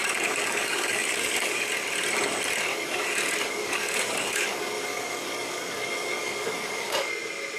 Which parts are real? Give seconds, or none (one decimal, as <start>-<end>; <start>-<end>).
1.7-2.7; 7.1-7.6